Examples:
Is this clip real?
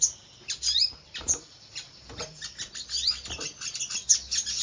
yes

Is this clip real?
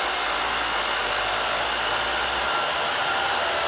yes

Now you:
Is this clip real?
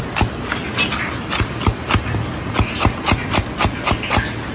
yes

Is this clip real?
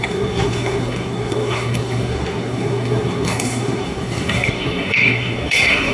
no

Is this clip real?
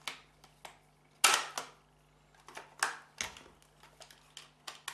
yes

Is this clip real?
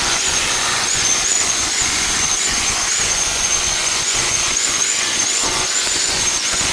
no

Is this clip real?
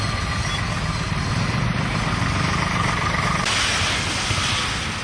yes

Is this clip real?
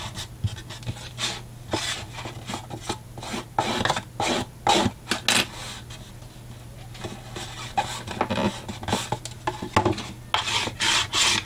yes